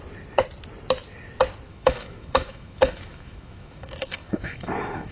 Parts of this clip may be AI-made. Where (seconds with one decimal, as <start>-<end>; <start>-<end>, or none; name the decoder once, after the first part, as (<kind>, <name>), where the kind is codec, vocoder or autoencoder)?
1.7-5.1 (autoencoder, DAC-VAE)